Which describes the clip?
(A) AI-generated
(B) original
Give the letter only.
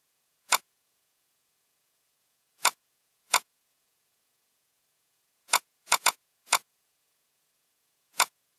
A